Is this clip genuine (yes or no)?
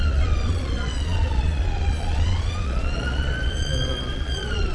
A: no